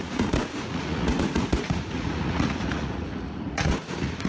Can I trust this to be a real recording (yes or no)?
no